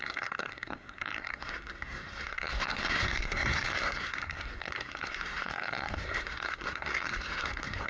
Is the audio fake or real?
fake